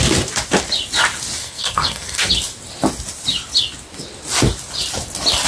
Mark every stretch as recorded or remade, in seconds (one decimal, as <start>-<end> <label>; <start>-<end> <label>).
0.0-1.4 recorded; 1.4-2.3 remade; 2.3-5.5 recorded